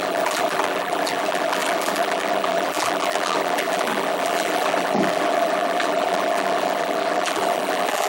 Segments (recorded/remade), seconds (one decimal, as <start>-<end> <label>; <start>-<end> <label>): 0.0-8.1 remade